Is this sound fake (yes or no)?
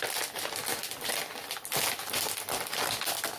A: no